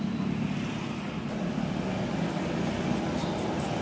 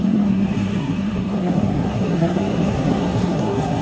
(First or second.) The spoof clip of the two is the second